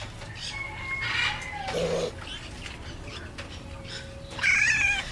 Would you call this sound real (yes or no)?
yes